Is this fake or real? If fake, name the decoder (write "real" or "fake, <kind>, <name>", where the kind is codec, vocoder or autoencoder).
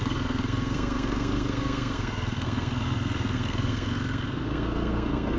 fake, codec, SNAC